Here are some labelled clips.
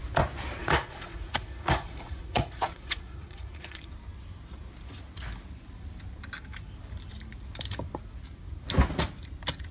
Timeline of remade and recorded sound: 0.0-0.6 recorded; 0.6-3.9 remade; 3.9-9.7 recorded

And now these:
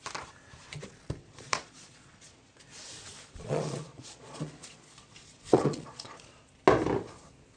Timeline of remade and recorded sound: 0.0-1.2 recorded; 1.2-2.6 remade; 2.6-3.1 recorded; 3.1-6.5 remade; 6.5-7.6 recorded

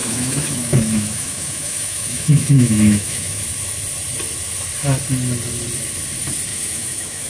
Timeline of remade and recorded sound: 0.0-3.4 remade; 3.4-6.5 recorded; 6.5-7.3 remade

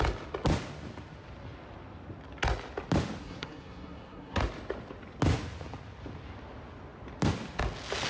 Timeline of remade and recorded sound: 0.0-3.2 recorded; 3.2-4.4 remade; 4.4-8.1 recorded

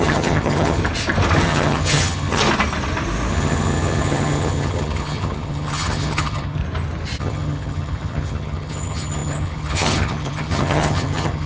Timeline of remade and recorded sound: 0.0-0.8 remade; 0.8-1.4 recorded; 1.4-2.4 remade; 2.4-3.3 recorded; 3.3-6.6 remade; 6.6-7.2 recorded; 7.2-11.5 remade

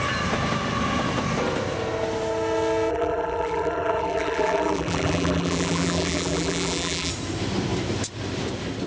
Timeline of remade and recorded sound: 0.0-2.9 recorded; 2.9-7.1 remade; 7.1-8.9 recorded

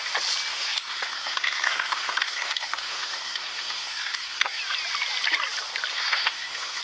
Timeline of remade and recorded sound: 0.0-0.5 recorded; 0.5-4.6 remade; 4.6-5.9 recorded; 5.9-6.8 remade

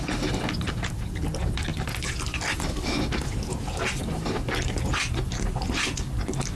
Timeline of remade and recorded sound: 0.0-6.6 recorded